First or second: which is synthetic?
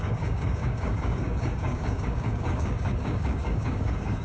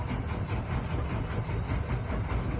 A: first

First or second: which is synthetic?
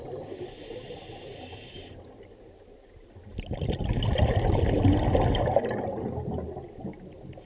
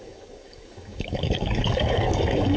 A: second